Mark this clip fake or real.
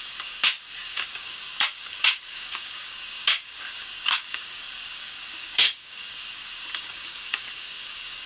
fake